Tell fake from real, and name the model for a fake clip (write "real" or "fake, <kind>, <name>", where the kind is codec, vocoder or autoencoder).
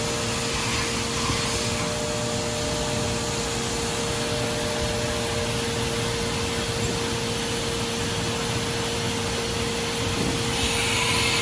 real